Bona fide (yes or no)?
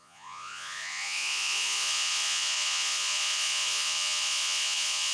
no